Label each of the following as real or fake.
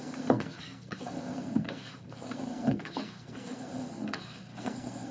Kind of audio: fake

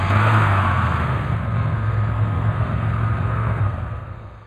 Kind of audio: fake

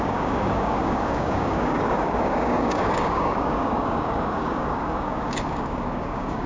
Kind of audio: fake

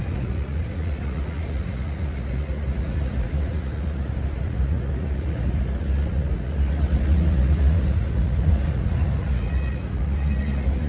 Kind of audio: fake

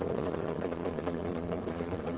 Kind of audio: fake